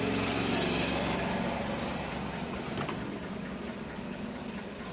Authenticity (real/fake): real